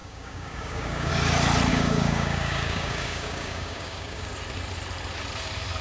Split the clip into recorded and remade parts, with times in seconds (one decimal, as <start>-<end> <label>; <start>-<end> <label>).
0.0-1.1 remade; 1.1-1.7 recorded; 1.7-4.3 remade; 4.3-5.8 recorded